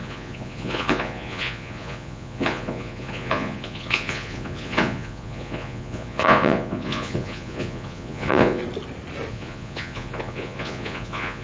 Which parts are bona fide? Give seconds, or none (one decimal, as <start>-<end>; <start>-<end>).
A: 8.6-9.3